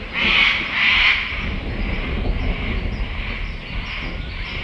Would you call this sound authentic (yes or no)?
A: yes